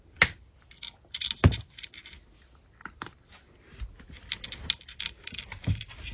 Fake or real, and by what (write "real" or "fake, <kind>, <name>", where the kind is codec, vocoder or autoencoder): real